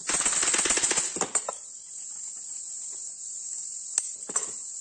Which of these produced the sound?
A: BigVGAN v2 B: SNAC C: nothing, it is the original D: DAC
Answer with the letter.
C